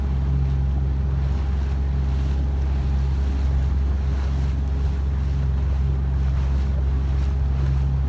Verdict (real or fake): real